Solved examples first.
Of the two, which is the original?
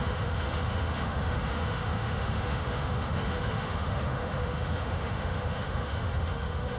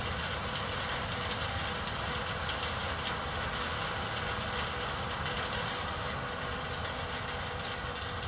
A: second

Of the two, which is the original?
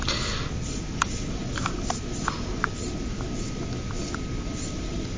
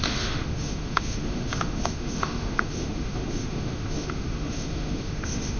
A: first